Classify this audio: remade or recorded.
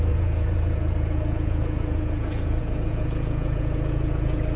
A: remade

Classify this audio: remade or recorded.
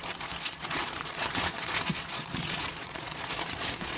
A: remade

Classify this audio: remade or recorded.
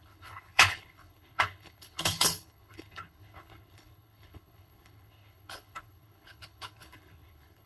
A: remade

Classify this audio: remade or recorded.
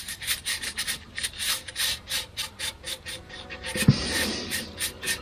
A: remade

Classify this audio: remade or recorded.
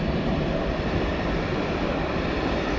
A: remade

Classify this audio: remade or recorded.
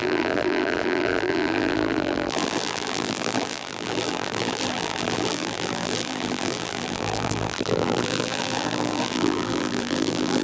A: remade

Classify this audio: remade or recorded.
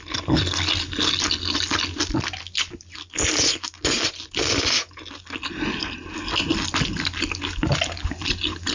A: recorded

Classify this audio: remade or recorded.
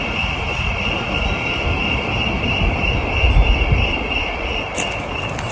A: recorded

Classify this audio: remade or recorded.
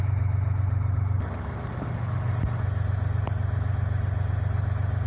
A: recorded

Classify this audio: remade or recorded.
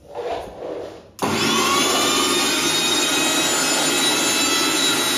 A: recorded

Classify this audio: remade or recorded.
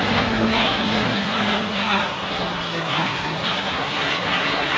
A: remade